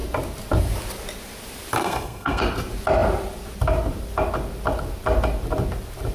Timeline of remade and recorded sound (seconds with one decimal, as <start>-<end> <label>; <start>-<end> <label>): 0.0-1.8 recorded; 1.8-2.4 remade; 2.4-6.1 recorded